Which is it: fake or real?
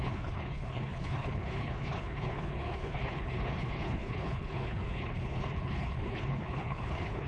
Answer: fake